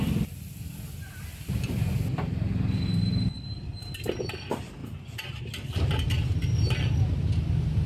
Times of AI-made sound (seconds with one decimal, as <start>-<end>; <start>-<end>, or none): none